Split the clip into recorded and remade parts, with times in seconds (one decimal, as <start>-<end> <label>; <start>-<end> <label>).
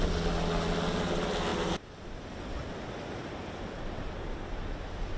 0.0-5.2 recorded